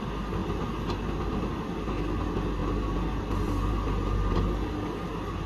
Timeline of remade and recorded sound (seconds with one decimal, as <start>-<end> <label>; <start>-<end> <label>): 0.0-5.5 recorded

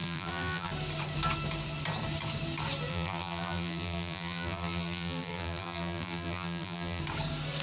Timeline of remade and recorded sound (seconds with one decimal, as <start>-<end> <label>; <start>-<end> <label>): 0.0-0.7 remade; 0.7-2.9 recorded; 2.9-7.0 remade; 7.0-7.6 recorded

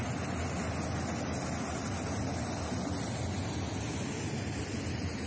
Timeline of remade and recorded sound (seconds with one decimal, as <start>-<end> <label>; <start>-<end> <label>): 0.0-5.3 recorded

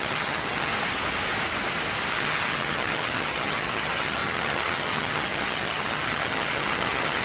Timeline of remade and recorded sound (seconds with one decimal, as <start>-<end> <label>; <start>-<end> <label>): 0.0-0.7 remade; 0.7-2.1 recorded; 2.1-7.2 remade

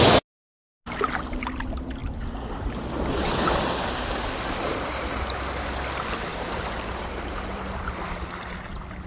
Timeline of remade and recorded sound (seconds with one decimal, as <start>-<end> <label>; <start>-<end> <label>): 0.0-6.3 recorded; 6.3-7.8 remade; 7.8-9.1 recorded

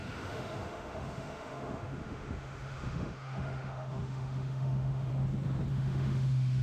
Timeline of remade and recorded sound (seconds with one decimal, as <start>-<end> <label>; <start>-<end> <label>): 0.0-5.1 remade; 5.1-5.7 recorded; 5.7-6.6 remade

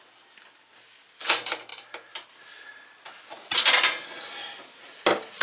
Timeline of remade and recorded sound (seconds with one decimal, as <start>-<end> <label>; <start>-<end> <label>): 0.0-5.4 recorded